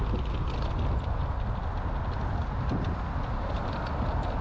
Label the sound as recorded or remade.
recorded